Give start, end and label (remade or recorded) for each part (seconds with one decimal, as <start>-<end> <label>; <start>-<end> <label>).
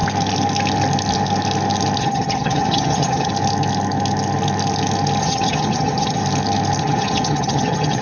0.0-2.0 recorded; 2.0-3.3 remade; 3.3-5.2 recorded; 5.2-6.2 remade; 6.2-6.8 recorded; 6.8-8.0 remade